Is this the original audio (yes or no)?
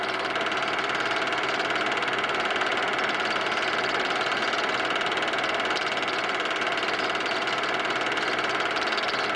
yes